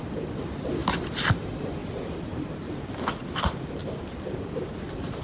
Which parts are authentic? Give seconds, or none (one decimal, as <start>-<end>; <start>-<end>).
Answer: 0.0-1.8